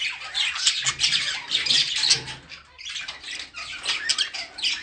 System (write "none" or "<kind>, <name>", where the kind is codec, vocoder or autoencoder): none